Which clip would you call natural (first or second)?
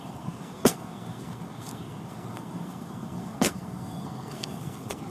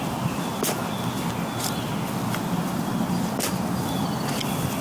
second